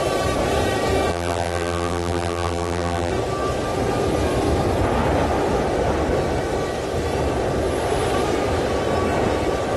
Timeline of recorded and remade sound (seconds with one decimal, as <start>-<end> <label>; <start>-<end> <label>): 0.0-1.1 recorded; 1.1-3.1 remade; 3.1-9.8 recorded